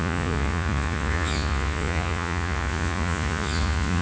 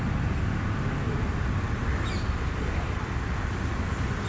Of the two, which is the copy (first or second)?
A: first